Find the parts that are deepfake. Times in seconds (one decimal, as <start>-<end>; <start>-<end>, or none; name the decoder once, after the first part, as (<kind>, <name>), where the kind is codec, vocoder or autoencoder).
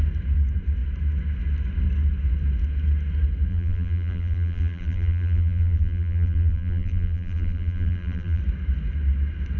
3.5-8.4 (vocoder, BigVGAN v2)